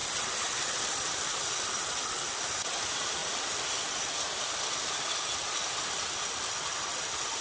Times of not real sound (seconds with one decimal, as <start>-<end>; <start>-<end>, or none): none